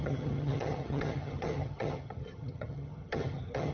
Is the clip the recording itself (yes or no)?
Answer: no